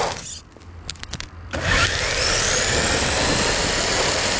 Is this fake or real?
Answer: real